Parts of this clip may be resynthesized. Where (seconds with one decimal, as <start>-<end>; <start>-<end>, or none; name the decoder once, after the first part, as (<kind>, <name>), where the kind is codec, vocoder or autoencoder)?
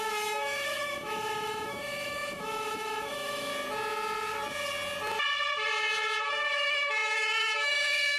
0.0-3.5 (autoencoder, DAC-VAE); 6.2-8.2